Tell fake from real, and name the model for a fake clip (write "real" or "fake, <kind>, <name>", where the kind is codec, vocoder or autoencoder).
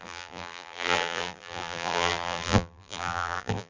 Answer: fake, vocoder, BigVGAN v2